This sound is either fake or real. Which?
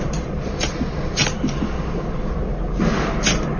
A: real